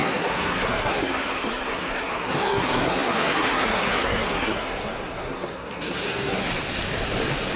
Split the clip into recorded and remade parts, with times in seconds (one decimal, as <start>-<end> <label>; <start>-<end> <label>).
0.0-6.5 remade; 6.5-7.6 recorded